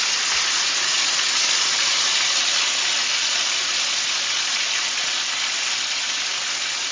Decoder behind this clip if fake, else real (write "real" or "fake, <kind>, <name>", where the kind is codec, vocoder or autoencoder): real